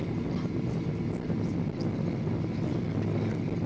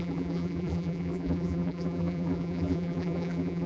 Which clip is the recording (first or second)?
first